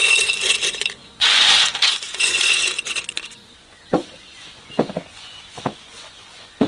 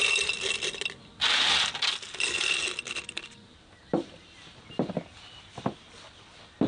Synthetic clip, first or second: first